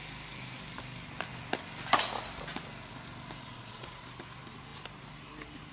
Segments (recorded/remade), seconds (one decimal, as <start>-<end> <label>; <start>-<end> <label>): 0.0-3.4 recorded; 3.4-4.0 remade; 4.0-5.7 recorded